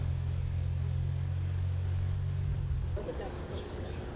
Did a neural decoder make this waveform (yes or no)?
yes